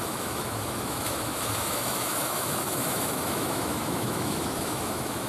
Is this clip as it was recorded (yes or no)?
no